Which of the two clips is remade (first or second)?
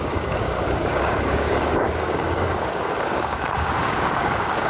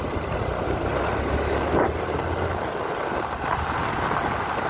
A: first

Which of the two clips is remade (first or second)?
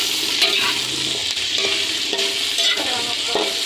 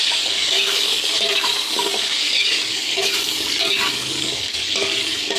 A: second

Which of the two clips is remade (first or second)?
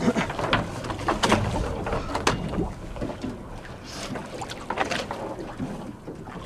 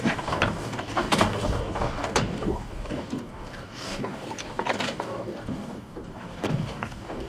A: second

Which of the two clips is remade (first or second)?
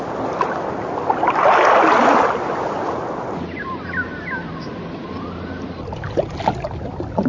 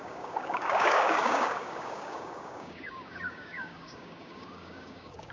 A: second